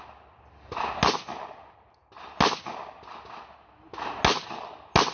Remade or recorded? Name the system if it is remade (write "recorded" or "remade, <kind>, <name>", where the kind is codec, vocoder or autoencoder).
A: recorded